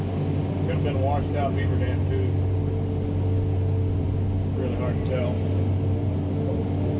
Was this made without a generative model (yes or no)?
yes